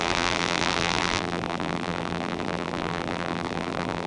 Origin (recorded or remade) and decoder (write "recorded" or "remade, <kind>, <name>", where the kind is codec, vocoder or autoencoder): remade, vocoder, BigVGAN v2